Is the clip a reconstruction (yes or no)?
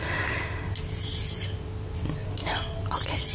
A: no